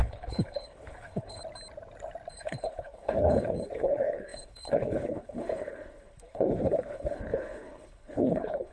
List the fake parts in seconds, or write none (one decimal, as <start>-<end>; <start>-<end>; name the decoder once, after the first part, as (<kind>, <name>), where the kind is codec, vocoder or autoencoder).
0.0-1.4 (codec, HILCodec); 2.3-8.7